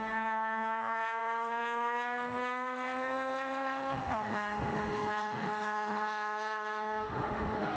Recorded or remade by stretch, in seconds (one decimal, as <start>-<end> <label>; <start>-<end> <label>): 0.0-7.8 remade